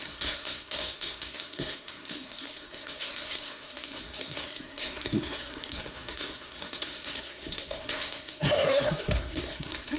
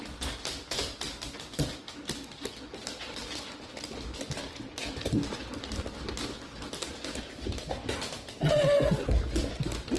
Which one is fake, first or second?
first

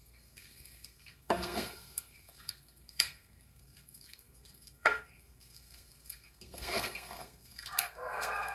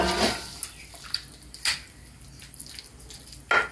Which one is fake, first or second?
first